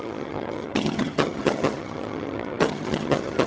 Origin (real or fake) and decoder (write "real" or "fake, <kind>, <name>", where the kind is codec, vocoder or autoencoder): fake, vocoder, HiFi-GAN